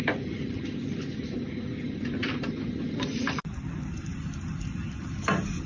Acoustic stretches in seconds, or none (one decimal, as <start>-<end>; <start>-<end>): 0.0-5.7